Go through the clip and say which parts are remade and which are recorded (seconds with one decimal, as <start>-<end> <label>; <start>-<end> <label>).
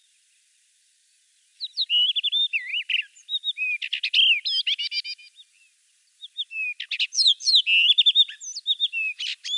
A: 0.0-9.6 recorded